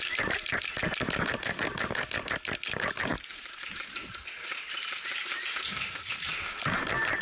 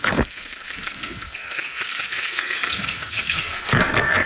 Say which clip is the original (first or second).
first